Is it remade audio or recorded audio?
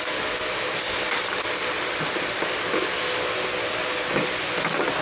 recorded